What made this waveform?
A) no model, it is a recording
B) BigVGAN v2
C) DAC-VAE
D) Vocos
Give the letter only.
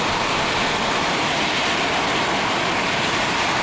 A